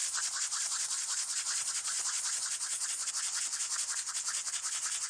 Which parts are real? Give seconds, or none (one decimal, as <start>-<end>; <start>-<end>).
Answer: 3.1-5.1